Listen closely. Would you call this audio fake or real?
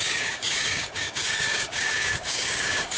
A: fake